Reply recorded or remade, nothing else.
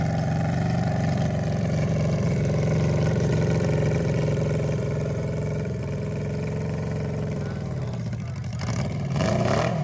remade